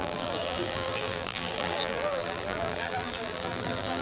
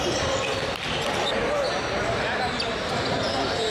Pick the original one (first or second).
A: second